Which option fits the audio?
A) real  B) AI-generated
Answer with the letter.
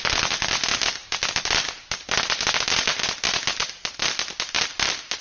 A